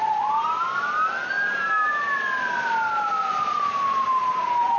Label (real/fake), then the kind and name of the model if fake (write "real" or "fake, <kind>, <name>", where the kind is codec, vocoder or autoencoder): real